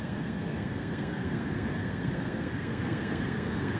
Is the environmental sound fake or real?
fake